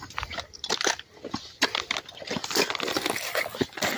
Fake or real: real